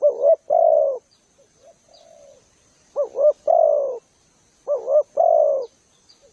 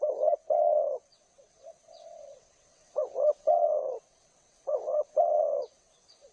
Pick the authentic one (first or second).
first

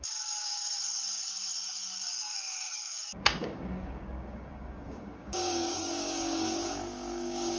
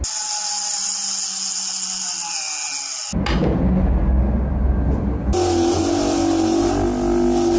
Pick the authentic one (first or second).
second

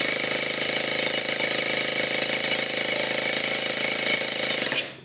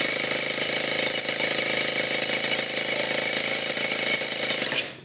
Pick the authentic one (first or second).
first